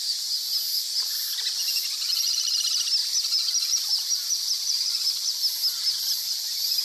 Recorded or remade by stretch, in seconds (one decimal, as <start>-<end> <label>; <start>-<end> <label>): 0.0-2.1 recorded; 2.1-2.6 remade; 2.6-3.0 recorded; 3.0-5.4 remade; 5.4-6.8 recorded